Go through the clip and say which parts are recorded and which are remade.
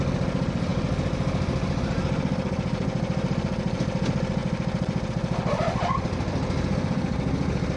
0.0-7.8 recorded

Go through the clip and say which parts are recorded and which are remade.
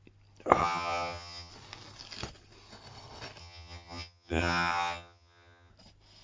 0.0-0.6 recorded; 0.6-1.5 remade; 1.5-3.4 recorded; 3.4-5.7 remade; 5.7-6.2 recorded